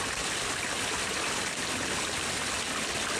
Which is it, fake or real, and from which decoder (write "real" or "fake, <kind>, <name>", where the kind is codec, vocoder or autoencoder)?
real